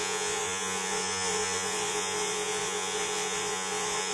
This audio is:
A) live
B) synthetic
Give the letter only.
B